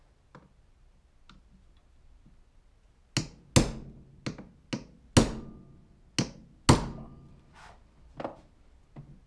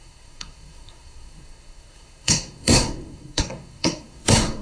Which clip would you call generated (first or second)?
second